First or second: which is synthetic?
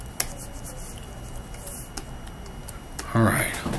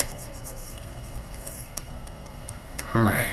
second